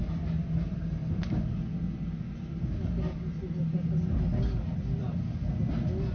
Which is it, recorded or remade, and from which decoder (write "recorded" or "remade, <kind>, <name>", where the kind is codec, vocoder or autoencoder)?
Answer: recorded